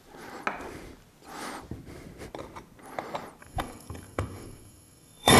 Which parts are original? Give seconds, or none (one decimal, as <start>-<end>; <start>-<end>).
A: 0.0-3.4